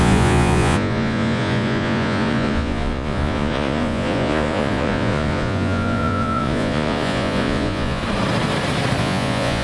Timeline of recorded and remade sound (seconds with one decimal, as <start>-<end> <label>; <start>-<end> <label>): 0.0-8.0 remade; 8.0-9.0 recorded; 9.0-9.6 remade